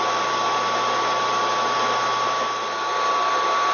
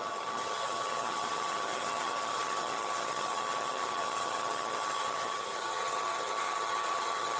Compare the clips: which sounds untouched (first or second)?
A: first